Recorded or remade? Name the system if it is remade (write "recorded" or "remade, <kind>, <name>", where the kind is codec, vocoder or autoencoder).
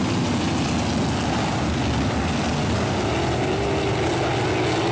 recorded